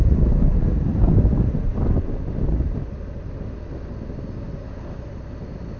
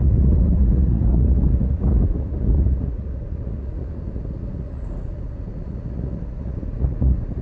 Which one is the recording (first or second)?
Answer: first